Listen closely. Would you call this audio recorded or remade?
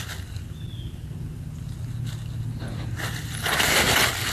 recorded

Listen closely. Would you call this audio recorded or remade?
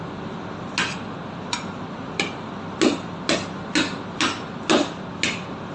recorded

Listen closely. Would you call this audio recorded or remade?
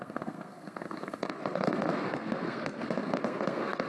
remade